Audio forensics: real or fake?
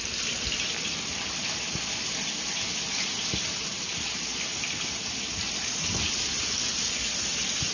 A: real